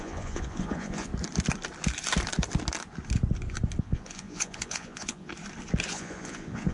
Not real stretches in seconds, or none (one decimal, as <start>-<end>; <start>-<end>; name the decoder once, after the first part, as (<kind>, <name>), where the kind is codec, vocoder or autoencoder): 0.0-1.1 (vocoder, Vocos); 3.8-5.3; 5.9-6.7